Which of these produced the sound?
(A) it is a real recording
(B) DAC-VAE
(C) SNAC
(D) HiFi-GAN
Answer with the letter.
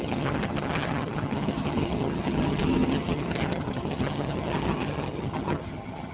D